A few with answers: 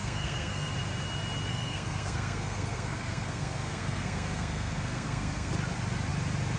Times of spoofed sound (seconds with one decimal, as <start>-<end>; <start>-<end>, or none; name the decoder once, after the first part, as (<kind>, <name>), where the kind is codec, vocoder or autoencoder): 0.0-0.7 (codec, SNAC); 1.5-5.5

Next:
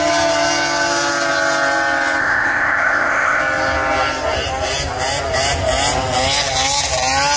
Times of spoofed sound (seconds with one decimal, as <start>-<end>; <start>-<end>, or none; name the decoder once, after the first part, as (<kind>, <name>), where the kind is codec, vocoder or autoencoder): 2.2-3.4 (codec, ZipCodec)

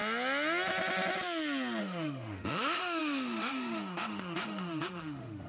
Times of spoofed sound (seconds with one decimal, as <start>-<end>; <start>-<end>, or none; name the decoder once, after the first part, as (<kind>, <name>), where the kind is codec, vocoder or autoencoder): 1.8-5.5 (autoencoder, DAC-VAE)

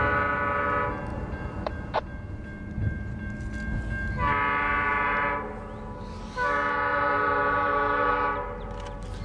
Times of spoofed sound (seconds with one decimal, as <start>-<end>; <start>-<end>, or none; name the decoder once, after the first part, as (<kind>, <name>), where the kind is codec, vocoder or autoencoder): 1.1-3.3 (vocoder, BigVGAN v2); 4.9-5.5; 6.9-8.1

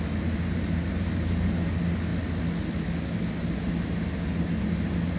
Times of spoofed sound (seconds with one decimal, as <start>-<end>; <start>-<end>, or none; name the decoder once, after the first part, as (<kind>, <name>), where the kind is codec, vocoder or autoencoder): none

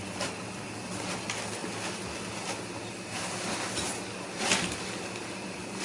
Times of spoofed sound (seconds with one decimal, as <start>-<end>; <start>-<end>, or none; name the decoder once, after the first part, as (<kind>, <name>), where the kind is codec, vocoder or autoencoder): none

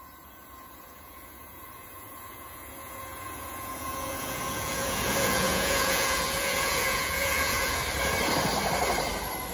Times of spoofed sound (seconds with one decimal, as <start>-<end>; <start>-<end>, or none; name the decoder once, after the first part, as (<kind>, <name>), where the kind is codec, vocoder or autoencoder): 0.0-7.8 (vocoder, Vocos)